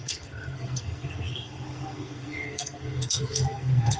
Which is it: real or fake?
fake